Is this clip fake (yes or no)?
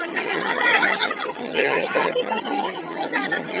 yes